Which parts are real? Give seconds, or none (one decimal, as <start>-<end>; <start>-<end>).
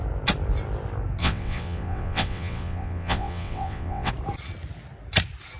0.0-1.2; 4.1-5.6